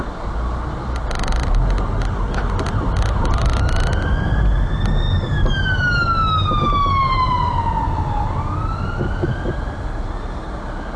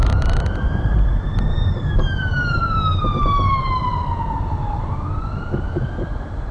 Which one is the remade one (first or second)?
second